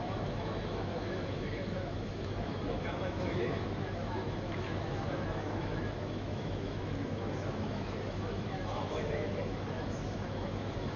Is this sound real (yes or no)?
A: no